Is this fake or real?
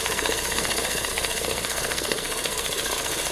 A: fake